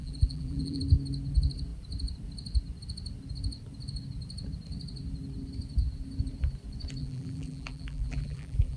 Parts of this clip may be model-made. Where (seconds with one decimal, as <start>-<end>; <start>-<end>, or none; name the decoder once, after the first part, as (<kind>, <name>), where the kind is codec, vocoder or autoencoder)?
0.0-0.8 (vocoder, BigVGAN v2); 7.0-8.8